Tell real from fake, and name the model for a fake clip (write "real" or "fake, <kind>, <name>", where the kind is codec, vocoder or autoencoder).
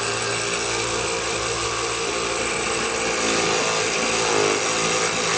real